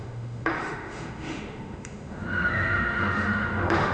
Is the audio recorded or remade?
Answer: remade